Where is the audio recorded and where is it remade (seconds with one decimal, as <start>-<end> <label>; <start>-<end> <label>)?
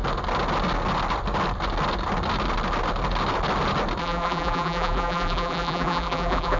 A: 0.0-4.0 recorded; 4.0-6.6 remade